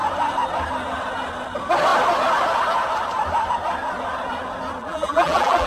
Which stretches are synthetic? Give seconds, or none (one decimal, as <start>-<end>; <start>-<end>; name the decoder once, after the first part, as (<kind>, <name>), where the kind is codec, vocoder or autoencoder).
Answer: 4.8-5.7 (vocoder, BigVGAN v2)